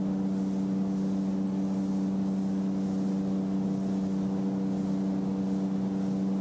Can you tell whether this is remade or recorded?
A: recorded